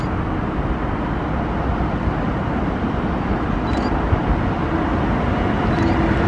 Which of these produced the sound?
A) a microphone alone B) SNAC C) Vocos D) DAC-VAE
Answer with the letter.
A